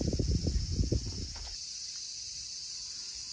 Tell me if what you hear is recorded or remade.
recorded